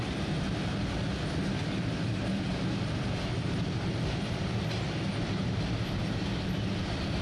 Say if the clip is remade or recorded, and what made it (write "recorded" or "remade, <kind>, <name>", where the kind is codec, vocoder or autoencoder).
recorded